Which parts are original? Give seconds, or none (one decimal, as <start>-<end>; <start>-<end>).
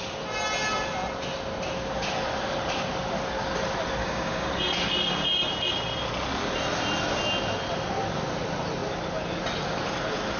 0.0-4.0; 4.5-10.4